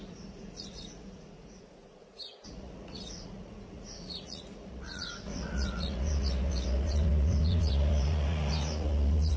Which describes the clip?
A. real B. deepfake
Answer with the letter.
B